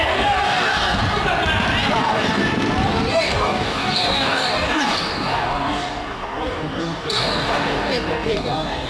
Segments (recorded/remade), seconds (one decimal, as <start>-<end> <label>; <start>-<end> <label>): 0.0-1.0 remade; 1.0-2.0 recorded; 2.0-2.4 remade; 2.4-3.1 recorded; 3.1-8.9 remade